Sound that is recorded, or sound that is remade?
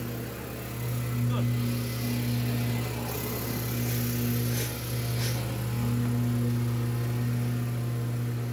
recorded